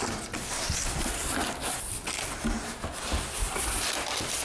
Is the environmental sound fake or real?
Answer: real